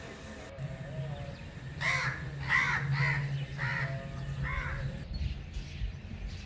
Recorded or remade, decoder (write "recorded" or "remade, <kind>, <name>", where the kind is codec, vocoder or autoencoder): recorded